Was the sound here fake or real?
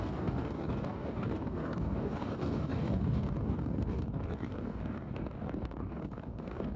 fake